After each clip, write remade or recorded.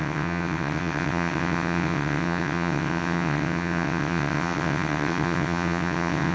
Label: remade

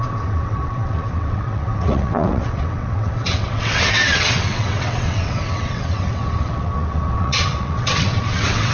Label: remade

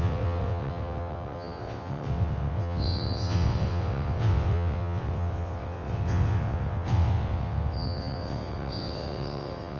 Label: remade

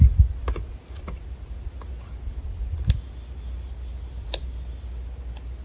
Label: recorded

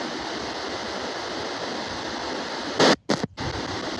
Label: recorded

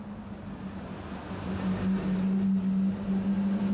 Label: recorded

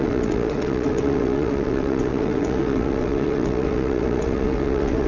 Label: remade